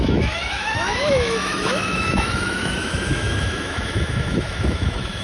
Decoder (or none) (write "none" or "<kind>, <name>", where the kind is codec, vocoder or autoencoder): autoencoder, DAC-VAE